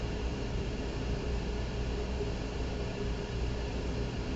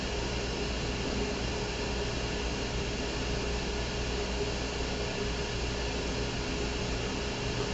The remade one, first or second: first